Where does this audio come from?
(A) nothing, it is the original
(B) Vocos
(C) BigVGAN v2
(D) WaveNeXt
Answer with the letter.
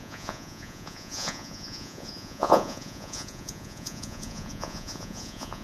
B